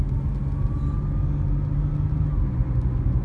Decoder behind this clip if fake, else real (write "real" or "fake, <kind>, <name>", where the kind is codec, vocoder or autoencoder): real